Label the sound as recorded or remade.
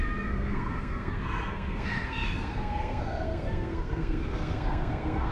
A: remade